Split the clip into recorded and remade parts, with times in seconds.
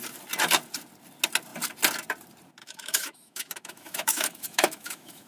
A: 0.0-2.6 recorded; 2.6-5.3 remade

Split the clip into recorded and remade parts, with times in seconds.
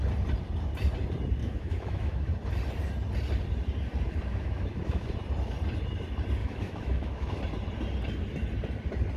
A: 0.0-1.4 recorded; 1.4-2.3 remade; 2.3-4.3 recorded; 4.3-5.1 remade; 5.1-6.4 recorded; 6.4-7.4 remade; 7.4-9.2 recorded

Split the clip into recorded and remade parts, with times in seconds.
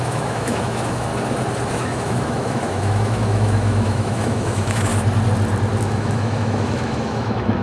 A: 0.0-1.1 remade; 1.1-1.7 recorded; 1.7-4.9 remade; 4.9-5.8 recorded; 5.8-7.6 remade